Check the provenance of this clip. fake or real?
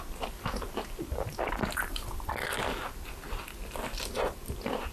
real